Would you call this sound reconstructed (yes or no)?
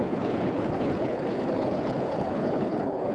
yes